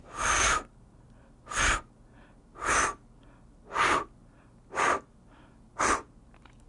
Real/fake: real